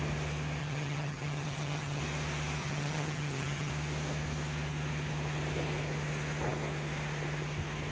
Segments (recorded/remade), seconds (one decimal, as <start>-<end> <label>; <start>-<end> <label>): 0.0-0.6 recorded; 0.6-2.0 remade; 2.0-2.6 recorded; 2.6-3.7 remade; 3.7-7.9 recorded